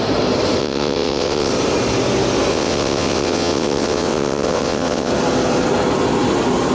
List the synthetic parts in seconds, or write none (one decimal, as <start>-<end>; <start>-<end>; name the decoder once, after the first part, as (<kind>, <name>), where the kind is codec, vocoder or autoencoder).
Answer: 0.6-1.5 (vocoder, WaveNeXt); 2.5-5.1